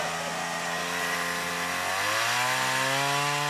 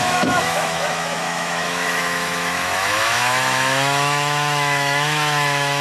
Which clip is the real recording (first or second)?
first